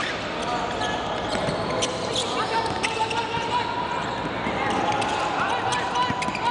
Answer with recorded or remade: recorded